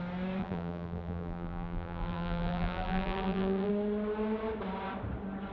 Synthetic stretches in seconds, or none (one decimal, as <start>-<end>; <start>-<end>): 0.4-3.7